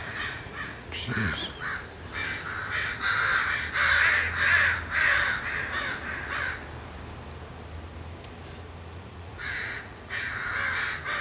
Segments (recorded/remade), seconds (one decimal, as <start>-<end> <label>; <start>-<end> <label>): 0.0-1.4 remade; 1.4-8.9 recorded; 8.9-10.5 remade; 10.5-11.2 recorded